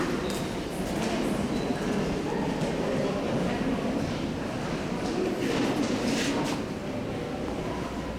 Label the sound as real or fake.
real